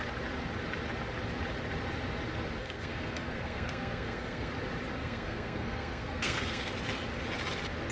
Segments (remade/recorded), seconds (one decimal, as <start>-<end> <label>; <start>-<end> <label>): 0.0-2.6 recorded; 2.6-4.5 remade; 4.5-5.0 recorded; 5.0-6.7 remade; 6.7-7.9 recorded